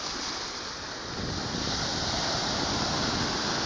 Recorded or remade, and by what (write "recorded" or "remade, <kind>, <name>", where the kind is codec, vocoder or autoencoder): recorded